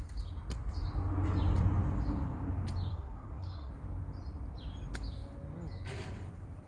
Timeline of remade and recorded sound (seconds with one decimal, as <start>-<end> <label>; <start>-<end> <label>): 0.0-2.9 recorded; 2.9-3.7 remade; 3.7-6.7 recorded